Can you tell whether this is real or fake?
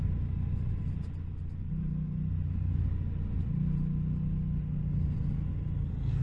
real